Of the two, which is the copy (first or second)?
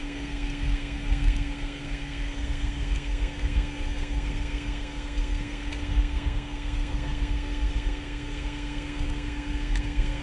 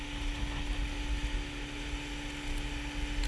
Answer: first